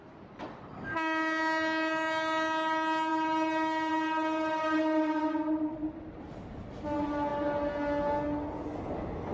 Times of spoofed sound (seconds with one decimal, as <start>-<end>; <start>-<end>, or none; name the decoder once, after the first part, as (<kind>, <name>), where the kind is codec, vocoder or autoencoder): none